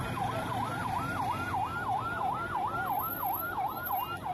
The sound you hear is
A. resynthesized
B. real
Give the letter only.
B